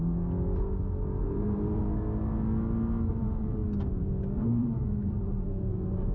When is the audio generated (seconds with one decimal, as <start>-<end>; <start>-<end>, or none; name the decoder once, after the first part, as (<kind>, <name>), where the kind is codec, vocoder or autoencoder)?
1.2-1.8 (vocoder, BigVGAN v2); 3.1-3.6; 4.6-6.1